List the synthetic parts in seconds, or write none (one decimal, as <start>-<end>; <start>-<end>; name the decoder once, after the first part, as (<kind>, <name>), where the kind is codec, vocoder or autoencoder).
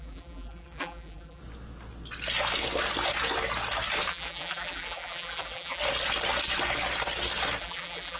0.0-1.4 (vocoder, BigVGAN v2); 4.1-5.8; 7.6-8.2